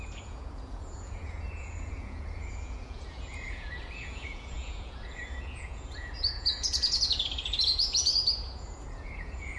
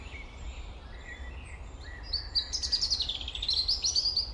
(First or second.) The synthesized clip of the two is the first